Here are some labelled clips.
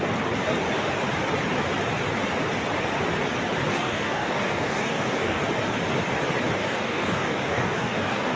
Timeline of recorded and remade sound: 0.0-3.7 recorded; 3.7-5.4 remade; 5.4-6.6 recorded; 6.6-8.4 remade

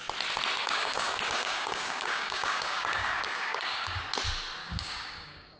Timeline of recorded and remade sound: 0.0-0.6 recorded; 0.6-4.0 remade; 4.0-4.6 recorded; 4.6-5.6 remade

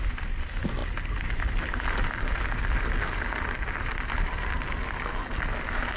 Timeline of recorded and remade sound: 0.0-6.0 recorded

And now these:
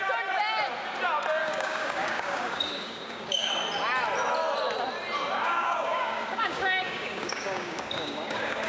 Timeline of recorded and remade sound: 0.0-1.4 recorded; 1.4-3.5 remade; 3.5-5.4 recorded; 5.4-8.7 remade